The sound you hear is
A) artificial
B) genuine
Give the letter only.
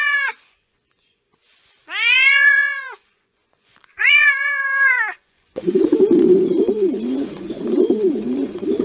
A